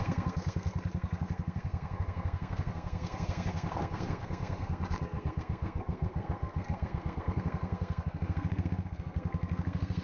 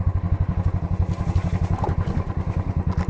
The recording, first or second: second